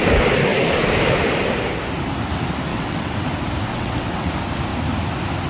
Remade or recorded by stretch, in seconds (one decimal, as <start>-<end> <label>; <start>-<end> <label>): 0.0-2.7 recorded; 2.7-3.2 remade; 3.2-3.7 recorded; 3.7-4.3 remade; 4.3-5.5 recorded